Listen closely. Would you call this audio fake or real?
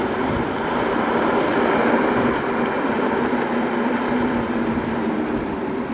fake